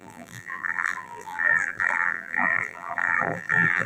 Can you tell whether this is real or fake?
fake